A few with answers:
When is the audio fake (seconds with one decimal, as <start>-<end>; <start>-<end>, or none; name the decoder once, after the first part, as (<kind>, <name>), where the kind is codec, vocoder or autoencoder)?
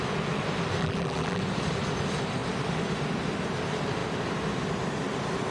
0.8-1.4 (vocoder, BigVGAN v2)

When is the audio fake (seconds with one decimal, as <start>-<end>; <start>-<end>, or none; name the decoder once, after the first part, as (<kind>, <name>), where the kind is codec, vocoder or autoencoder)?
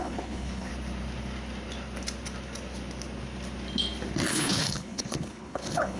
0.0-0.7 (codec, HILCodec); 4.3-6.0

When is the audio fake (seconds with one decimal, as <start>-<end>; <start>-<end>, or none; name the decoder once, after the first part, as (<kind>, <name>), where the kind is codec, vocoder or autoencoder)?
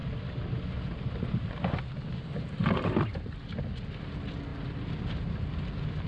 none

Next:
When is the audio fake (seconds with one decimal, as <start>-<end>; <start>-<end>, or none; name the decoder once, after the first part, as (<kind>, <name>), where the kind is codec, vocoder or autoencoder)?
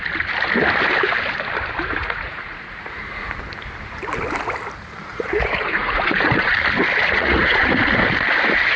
2.0-3.3 (vocoder, Vocos); 5.1-6.5; 7.0-7.7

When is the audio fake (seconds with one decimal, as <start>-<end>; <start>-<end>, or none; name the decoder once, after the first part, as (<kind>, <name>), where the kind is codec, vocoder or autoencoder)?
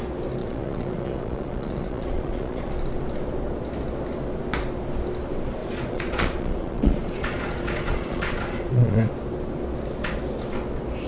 0.4-2.7 (vocoder, Vocos); 5.6-9.1